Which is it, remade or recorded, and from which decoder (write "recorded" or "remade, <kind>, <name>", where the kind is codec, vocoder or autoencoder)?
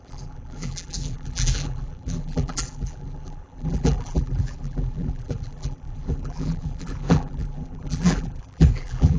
remade, vocoder, BigVGAN v2